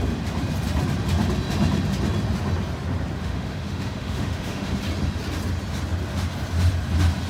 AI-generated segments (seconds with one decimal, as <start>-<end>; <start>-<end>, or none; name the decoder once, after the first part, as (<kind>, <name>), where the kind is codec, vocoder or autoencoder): 3.2-4.8 (autoencoder, DAC-VAE)